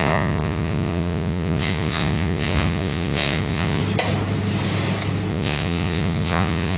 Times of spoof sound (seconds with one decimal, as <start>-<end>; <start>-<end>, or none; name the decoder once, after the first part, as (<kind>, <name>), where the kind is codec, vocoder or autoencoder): 0.0-3.8 (vocoder, Vocos); 5.3-6.8